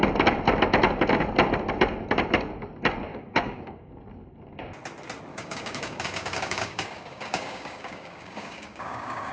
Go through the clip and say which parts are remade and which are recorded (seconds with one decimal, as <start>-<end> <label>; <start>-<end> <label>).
0.0-3.1 recorded; 3.1-3.9 remade; 3.9-5.3 recorded; 5.3-9.3 remade